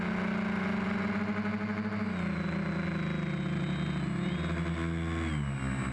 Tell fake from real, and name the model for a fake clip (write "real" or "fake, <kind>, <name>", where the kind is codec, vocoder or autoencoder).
real